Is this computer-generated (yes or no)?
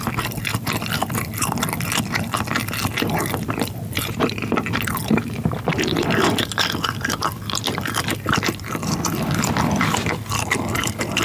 yes